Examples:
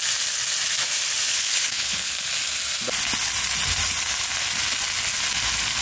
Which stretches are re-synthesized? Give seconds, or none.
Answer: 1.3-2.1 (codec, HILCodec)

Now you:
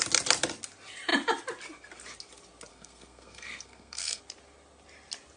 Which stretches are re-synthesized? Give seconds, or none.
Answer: 2.7-4.2 (codec, SNAC)

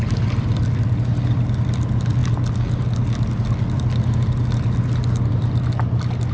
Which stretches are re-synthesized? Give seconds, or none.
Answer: none

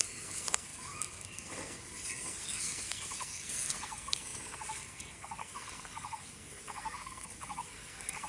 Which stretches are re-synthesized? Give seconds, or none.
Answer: 0.0-8.3 (codec, SNAC)

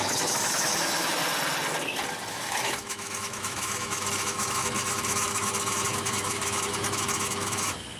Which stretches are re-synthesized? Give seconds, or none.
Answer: 0.0-1.2 (autoencoder, DAC-VAE); 2.3-8.0

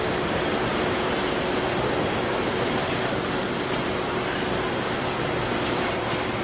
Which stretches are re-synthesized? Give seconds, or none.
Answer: 2.8-3.6 (codec, DAC)